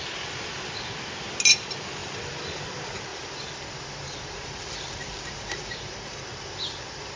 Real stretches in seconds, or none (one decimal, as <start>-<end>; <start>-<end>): 0.0-2.0; 2.6-3.1